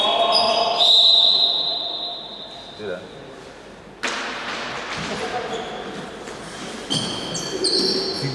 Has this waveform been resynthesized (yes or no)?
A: no